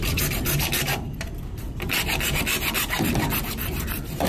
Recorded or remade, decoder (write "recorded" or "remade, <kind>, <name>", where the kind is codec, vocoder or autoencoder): remade, vocoder, BigVGAN v2